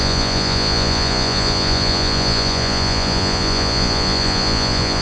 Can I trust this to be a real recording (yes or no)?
no